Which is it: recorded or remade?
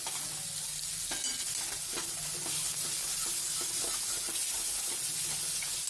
recorded